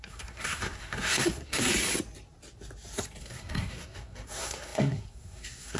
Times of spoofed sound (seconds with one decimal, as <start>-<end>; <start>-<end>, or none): 0.0-1.7; 3.2-5.8